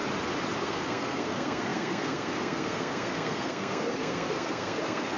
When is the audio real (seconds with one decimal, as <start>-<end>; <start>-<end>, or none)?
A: 0.0-0.6